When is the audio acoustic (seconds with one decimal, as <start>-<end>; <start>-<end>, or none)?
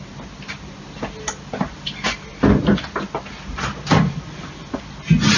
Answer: 0.0-5.4